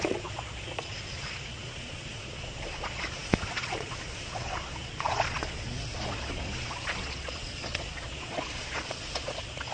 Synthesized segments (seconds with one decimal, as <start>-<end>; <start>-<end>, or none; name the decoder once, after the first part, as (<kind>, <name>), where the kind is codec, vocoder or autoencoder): 0.0-9.7 (vocoder, Vocos)